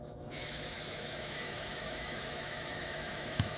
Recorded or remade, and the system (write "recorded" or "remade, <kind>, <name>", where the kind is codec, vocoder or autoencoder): remade, autoencoder, DAC-VAE